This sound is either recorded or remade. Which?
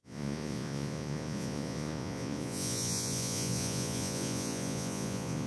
remade